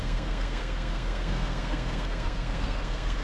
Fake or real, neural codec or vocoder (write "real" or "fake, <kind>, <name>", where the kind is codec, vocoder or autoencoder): fake, codec, SNAC